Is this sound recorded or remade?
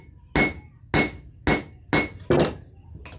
recorded